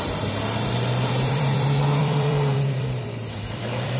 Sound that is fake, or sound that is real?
fake